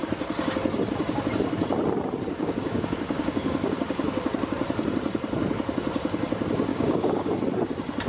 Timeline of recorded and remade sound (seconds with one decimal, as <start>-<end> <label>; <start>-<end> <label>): 0.0-2.4 recorded; 2.4-4.3 remade; 4.3-6.7 recorded; 6.7-7.3 remade; 7.3-8.1 recorded